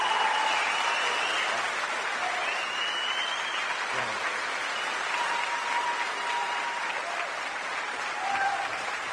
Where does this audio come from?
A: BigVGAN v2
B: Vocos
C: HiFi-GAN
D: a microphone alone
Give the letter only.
A